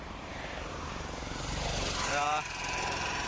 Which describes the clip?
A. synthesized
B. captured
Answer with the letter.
A